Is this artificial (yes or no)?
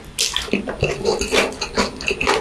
no